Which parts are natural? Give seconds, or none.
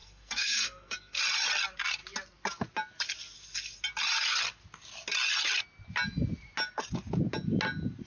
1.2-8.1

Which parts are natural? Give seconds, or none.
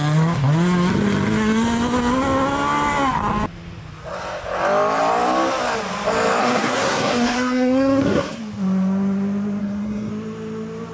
0.0-6.4; 8.4-9.6; 10.1-10.9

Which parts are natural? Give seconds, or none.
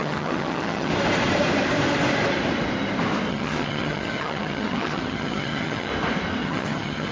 0.9-3.3; 5.9-6.4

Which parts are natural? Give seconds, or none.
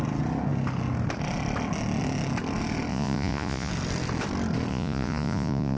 0.0-2.9; 3.7-4.7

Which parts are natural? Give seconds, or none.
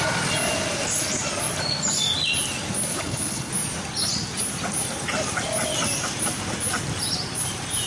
0.0-2.9; 3.5-7.9